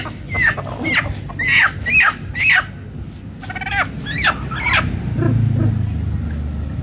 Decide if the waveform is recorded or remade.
recorded